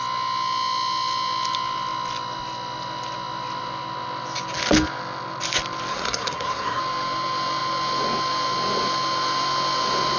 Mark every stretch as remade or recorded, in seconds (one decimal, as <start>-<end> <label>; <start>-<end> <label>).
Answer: 0.0-5.9 recorded; 5.9-6.8 remade; 6.8-10.2 recorded